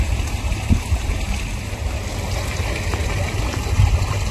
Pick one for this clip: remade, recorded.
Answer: recorded